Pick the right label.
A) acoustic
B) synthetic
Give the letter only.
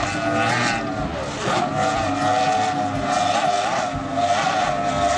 A